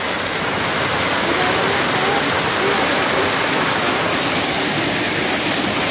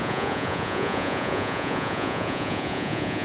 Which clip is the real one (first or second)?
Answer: first